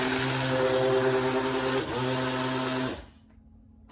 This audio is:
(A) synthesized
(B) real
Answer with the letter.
B